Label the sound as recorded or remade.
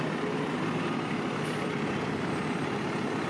remade